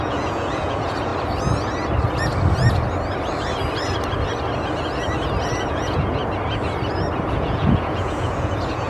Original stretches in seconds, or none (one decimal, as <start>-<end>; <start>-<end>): 1.1-5.7; 6.2-7.3